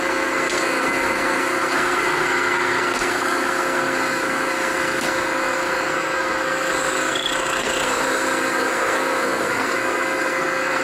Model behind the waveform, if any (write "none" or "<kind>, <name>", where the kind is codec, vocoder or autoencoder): codec, SNAC